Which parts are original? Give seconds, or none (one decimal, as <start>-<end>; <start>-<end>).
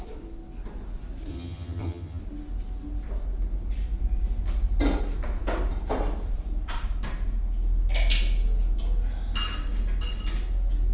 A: 0.0-1.3; 2.2-10.9